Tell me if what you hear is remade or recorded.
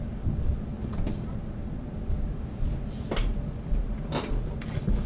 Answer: recorded